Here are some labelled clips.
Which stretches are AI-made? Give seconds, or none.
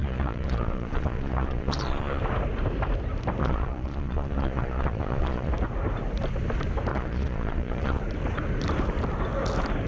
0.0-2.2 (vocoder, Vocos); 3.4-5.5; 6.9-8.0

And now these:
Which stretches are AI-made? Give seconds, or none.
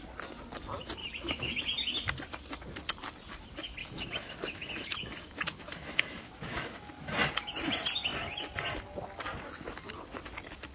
1.0-1.6 (autoencoder, DAC-VAE); 3.8-7.1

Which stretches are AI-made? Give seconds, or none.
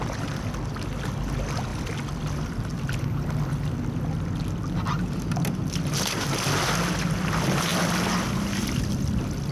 1.7-2.8 (vocoder, BigVGAN v2); 7.7-8.7